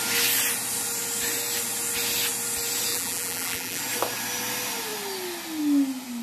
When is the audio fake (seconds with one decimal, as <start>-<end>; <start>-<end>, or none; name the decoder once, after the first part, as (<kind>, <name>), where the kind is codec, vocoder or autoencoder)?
2.9-3.8 (vocoder, BigVGAN v2)